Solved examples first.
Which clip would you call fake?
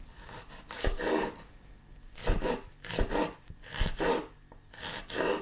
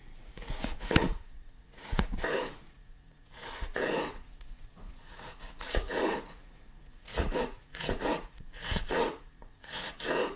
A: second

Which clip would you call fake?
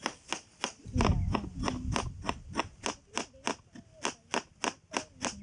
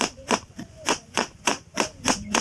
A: second